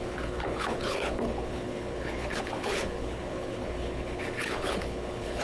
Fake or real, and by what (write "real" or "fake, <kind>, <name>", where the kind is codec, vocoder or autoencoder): fake, codec, HILCodec